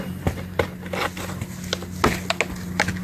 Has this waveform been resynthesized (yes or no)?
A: no